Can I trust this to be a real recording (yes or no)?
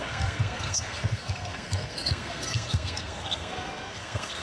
no